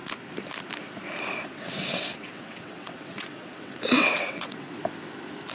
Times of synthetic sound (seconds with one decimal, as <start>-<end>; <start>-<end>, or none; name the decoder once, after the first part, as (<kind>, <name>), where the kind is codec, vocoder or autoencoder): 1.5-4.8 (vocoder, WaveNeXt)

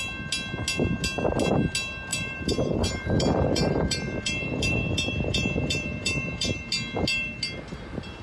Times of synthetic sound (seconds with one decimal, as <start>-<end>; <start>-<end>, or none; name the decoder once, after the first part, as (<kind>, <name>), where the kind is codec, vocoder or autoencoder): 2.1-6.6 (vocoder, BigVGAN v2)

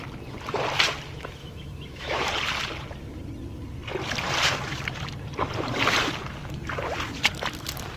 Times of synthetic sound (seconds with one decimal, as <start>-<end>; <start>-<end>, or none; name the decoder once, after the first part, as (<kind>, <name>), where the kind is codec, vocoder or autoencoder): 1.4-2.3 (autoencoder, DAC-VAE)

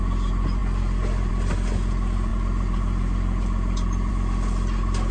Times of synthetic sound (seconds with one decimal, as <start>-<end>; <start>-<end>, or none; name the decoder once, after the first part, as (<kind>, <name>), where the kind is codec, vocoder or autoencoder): 0.6-1.3 (vocoder, BigVGAN v2); 2.3-4.1

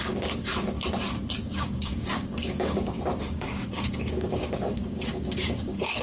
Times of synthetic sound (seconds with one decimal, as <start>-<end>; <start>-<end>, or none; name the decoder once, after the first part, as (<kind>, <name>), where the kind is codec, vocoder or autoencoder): 0.0-0.5 (codec, DAC); 1.4-6.0